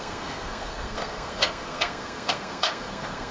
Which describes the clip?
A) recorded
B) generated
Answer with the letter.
B